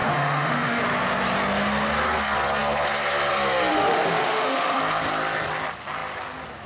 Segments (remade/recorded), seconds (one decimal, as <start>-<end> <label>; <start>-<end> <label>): 0.0-0.8 remade; 0.8-3.7 recorded; 3.7-4.8 remade; 4.8-6.7 recorded